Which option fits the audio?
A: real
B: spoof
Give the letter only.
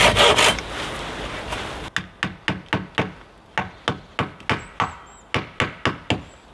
A